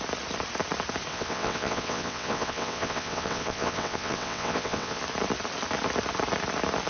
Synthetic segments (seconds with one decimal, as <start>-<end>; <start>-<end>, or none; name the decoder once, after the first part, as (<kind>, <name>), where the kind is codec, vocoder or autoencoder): 1.1-5.0 (vocoder, WaveNeXt)